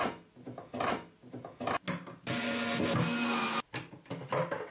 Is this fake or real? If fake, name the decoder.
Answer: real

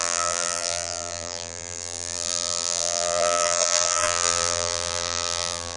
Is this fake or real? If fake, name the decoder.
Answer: fake, vocoder, BigVGAN v2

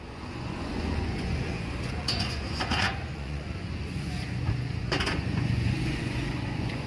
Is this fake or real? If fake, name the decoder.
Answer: fake, vocoder, Vocos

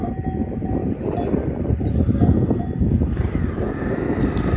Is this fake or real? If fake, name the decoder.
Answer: real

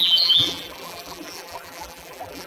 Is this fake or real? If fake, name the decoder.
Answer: fake, vocoder, BigVGAN v2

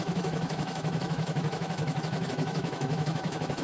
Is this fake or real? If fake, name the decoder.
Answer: fake, autoencoder, DAC-VAE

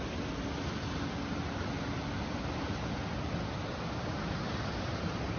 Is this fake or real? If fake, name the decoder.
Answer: real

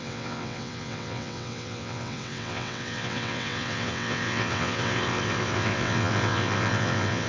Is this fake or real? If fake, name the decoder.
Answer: fake, vocoder, WaveNeXt